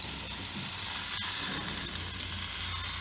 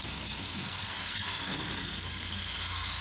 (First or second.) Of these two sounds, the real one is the first